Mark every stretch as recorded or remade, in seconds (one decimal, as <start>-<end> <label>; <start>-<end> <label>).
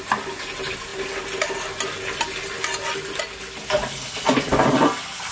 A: 0.0-5.3 recorded